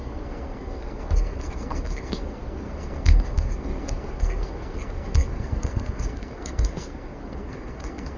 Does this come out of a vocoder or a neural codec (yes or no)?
yes